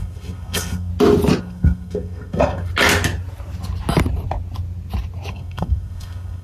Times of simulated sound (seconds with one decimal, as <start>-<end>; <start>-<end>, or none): 0.0-0.9; 1.4-2.7; 5.3-6.4